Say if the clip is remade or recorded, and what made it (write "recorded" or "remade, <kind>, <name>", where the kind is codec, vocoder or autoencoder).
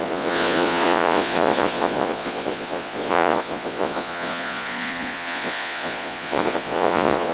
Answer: remade, vocoder, Vocos